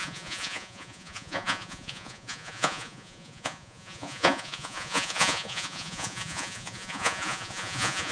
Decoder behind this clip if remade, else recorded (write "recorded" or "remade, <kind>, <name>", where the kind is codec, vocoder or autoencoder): remade, vocoder, Vocos